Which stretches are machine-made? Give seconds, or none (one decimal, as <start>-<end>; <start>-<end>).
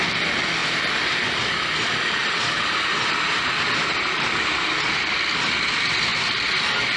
0.6-1.4; 2.2-4.8; 6.1-6.6